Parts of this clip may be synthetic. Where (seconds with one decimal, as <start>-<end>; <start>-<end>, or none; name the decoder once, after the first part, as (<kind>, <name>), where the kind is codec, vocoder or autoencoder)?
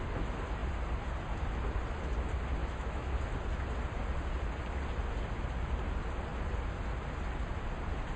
2.6-3.2 (autoencoder, DAC-VAE)